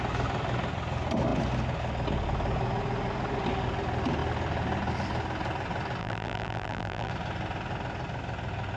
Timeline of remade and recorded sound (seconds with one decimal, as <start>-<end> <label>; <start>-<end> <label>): 0.0-6.0 recorded; 6.0-7.1 remade; 7.1-8.8 recorded